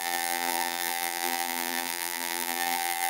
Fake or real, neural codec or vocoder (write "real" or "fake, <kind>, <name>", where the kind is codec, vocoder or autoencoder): fake, vocoder, BigVGAN v2